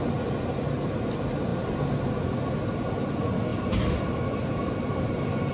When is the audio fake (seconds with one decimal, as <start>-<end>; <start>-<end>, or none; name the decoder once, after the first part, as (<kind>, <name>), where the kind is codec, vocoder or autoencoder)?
none